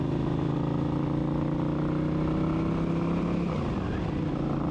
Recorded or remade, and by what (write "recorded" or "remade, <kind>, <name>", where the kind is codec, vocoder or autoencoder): recorded